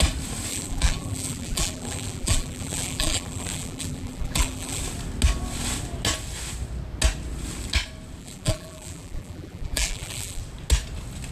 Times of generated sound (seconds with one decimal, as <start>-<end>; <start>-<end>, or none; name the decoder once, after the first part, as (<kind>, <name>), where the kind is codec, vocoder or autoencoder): 0.5-4.8 (vocoder, BigVGAN v2); 8.2-10.4